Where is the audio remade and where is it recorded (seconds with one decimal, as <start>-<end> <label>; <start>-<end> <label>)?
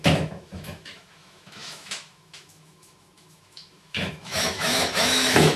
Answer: 0.0-5.6 remade